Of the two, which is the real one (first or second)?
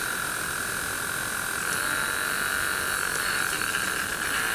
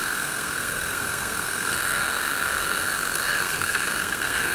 first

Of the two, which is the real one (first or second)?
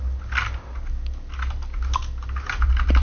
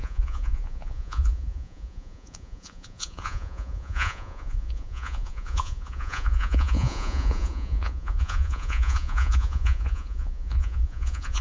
first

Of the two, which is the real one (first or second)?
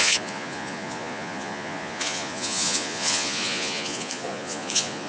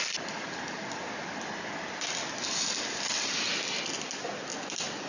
second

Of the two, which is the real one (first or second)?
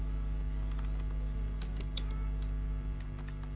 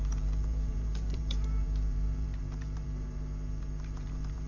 first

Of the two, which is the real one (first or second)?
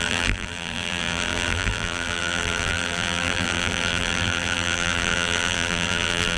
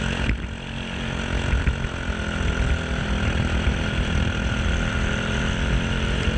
second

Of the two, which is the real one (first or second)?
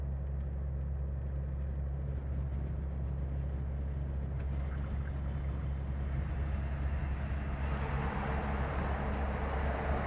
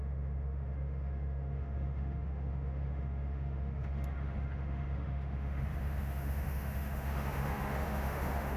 first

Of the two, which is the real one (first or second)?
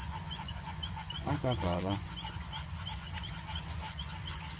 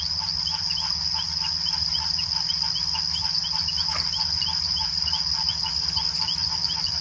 second